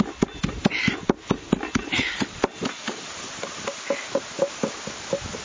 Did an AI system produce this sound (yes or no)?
no